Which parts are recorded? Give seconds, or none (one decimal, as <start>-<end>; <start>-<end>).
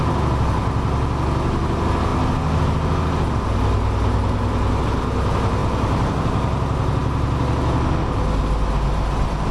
0.0-9.5